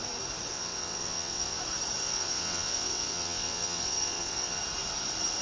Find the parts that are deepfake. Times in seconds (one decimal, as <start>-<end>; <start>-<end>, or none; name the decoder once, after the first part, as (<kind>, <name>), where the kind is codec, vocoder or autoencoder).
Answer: 0.5-1.6 (vocoder, WaveNeXt); 2.0-4.6